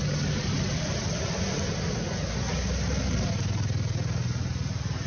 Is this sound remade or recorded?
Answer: recorded